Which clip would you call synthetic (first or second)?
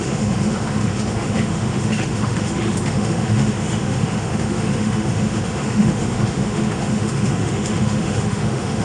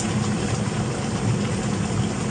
first